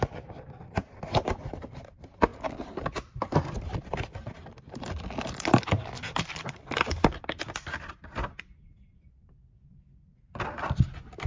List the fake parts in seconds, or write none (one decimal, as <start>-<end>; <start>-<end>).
0.8-1.5; 2.3-7.2